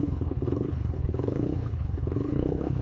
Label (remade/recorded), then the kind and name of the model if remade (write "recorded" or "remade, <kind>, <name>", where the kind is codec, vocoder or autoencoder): remade, codec, HILCodec